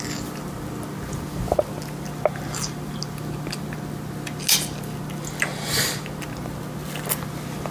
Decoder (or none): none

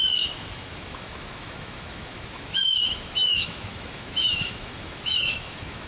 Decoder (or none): autoencoder, DAC-VAE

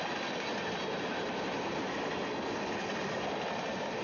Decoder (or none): none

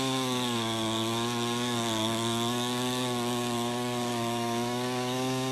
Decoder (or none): codec, DAC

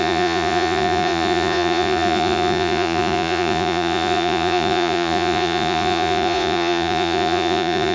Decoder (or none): vocoder, Vocos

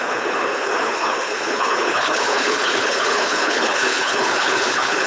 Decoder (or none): codec, HILCodec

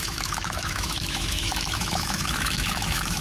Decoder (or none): autoencoder, DAC-VAE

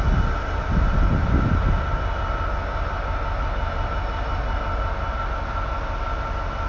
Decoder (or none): none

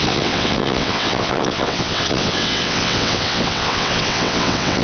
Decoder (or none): vocoder, WaveNeXt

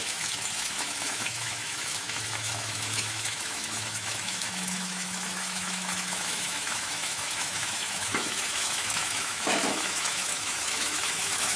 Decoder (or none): autoencoder, DAC-VAE